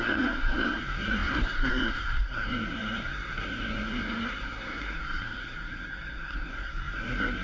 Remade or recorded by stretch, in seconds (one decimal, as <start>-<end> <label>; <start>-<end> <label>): 0.0-7.4 remade